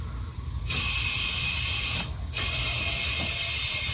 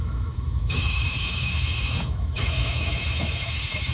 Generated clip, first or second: second